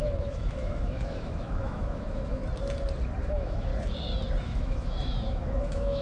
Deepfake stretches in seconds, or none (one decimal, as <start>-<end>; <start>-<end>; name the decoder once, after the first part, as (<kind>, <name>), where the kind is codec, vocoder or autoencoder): 0.0-2.4 (autoencoder, DAC-VAE); 3.2-3.7; 4.4-6.0